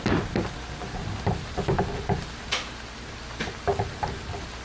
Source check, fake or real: real